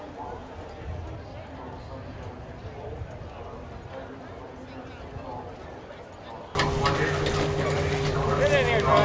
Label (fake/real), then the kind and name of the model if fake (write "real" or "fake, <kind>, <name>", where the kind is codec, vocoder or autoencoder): real